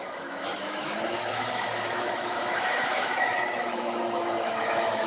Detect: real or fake fake